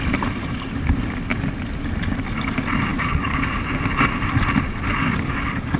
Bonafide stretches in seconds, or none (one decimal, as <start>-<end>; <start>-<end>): 0.0-2.9; 3.6-4.9